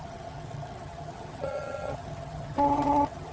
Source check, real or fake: fake